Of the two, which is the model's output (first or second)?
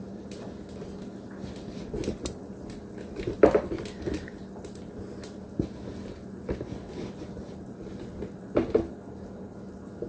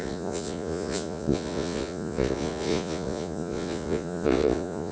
second